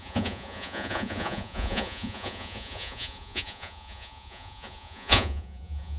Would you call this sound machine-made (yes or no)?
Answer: yes